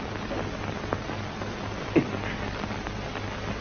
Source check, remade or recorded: recorded